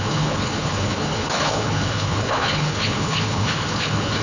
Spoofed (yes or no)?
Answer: yes